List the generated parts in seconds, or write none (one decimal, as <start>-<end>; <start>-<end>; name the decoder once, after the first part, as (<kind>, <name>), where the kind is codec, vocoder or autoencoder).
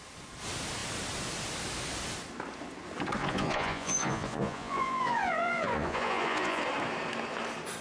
3.2-6.6 (vocoder, Vocos)